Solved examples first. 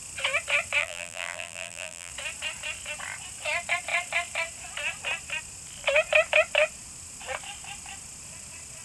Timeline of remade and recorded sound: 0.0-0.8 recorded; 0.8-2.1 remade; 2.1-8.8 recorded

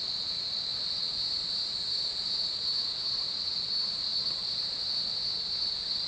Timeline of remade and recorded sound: 0.0-0.7 recorded; 0.7-3.5 remade; 3.5-4.1 recorded; 4.1-6.1 remade

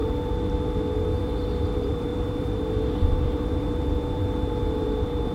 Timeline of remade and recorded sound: 0.0-0.9 recorded; 0.9-5.3 remade

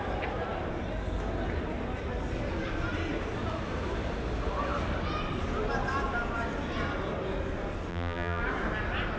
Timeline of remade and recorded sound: 0.0-7.9 recorded; 7.9-8.4 remade; 8.4-9.2 recorded

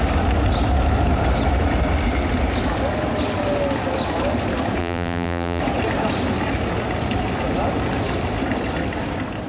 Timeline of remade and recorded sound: 0.0-4.8 recorded; 4.8-5.6 remade; 5.6-9.5 recorded

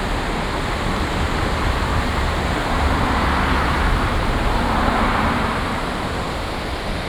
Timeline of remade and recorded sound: 0.0-1.9 recorded; 1.9-6.2 remade; 6.2-7.1 recorded

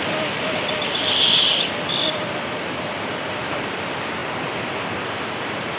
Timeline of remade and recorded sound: 0.0-4.2 remade; 4.2-5.0 recorded; 5.0-5.8 remade

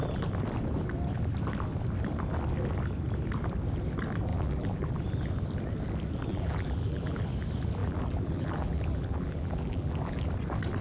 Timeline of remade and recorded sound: 0.0-4.3 recorded; 4.3-4.9 remade; 4.9-6.3 recorded; 6.3-7.2 remade; 7.2-7.8 recorded; 7.8-10.3 remade; 10.3-10.8 recorded